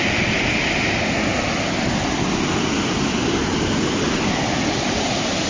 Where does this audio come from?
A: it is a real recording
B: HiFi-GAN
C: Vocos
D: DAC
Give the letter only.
A